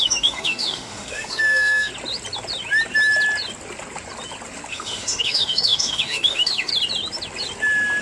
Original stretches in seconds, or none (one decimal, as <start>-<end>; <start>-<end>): 1.9-4.7; 6.7-8.0